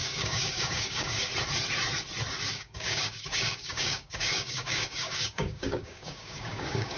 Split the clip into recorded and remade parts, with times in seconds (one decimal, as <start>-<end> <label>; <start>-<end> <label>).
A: 0.0-1.3 remade; 1.3-2.5 recorded; 2.5-7.0 remade